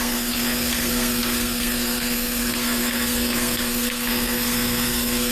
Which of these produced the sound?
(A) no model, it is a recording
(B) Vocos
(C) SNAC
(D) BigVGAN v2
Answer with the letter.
C